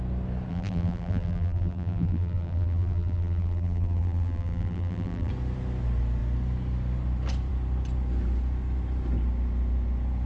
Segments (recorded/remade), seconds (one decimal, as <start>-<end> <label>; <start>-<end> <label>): 0.0-0.5 recorded; 0.5-5.3 remade; 5.3-10.3 recorded